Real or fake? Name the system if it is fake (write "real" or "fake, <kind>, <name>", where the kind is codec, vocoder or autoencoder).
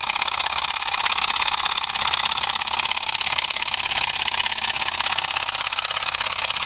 fake, autoencoder, DAC-VAE